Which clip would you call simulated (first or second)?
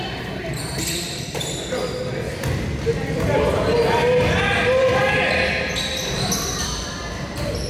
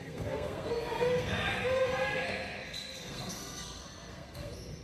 second